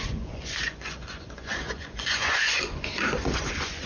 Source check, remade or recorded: remade